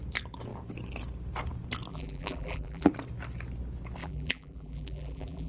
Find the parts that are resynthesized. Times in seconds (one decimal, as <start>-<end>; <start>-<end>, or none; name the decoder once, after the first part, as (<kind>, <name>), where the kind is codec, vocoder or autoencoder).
1.9-2.9 (vocoder, BigVGAN v2); 4.0-5.5